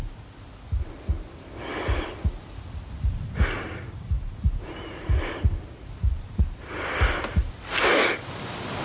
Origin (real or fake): real